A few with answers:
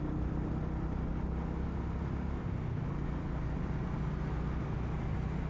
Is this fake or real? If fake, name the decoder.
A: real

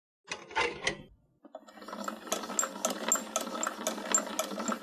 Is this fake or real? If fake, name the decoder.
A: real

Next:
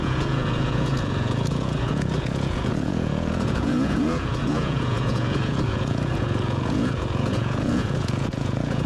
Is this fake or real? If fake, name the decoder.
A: fake, vocoder, Vocos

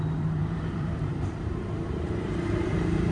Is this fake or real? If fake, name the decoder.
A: fake, vocoder, BigVGAN v2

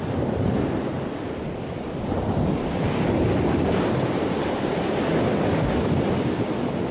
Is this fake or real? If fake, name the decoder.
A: real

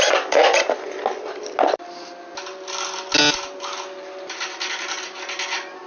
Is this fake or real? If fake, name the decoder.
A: real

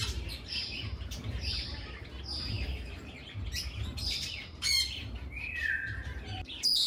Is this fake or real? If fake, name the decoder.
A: fake, vocoder, BigVGAN v2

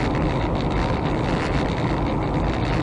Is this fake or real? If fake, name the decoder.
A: real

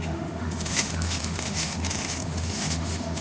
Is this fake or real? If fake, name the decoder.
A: fake, autoencoder, DAC-VAE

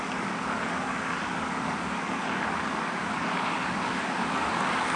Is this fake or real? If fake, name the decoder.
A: fake, codec, DAC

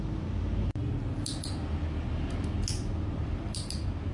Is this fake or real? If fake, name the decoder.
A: real